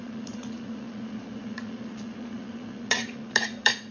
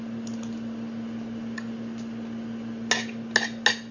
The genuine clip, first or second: second